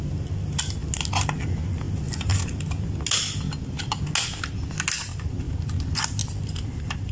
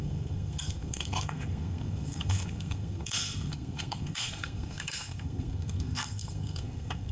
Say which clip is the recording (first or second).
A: first